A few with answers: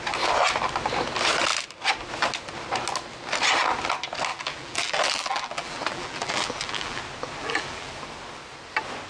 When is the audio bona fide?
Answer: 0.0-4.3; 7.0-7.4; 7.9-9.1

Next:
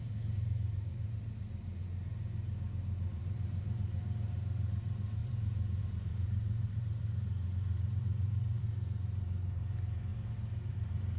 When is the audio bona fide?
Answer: 2.1-3.1; 10.1-10.7

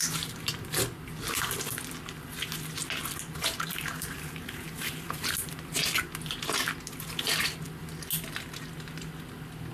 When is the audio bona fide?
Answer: 0.0-3.7; 5.8-9.7

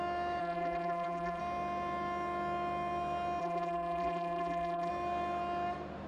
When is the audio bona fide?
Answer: 0.0-0.4; 1.4-3.4; 4.9-6.1

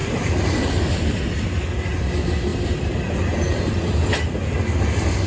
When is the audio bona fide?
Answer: 1.2-2.5; 3.1-5.3